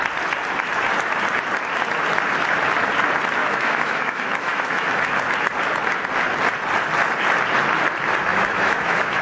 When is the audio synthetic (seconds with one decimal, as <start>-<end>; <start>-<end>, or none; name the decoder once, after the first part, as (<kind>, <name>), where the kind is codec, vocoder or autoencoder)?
3.4-4.9 (autoencoder, DAC-VAE); 8.3-9.2